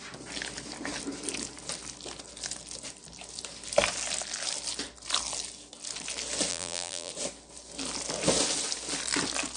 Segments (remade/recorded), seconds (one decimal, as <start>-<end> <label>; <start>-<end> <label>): 0.0-6.5 recorded; 6.5-7.1 remade; 7.1-9.6 recorded